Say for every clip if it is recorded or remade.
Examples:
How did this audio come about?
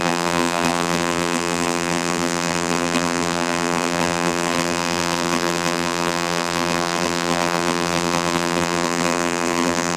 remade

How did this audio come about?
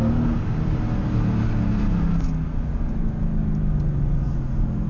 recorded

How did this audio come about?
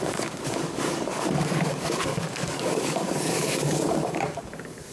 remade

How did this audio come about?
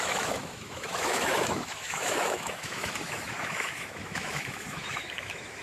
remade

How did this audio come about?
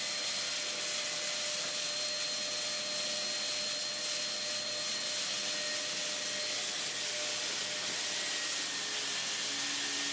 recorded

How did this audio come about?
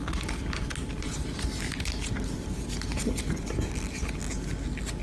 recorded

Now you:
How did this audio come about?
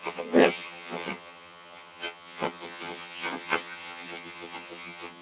remade